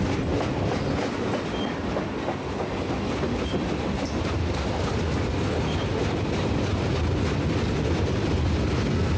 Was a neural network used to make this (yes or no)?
no